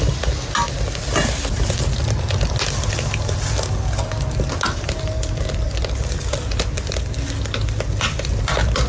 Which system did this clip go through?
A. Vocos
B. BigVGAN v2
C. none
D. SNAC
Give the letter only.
C